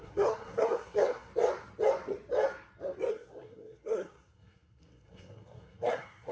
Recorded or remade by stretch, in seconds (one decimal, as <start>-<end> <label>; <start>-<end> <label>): 0.0-1.3 remade; 1.3-3.1 recorded; 3.1-6.3 remade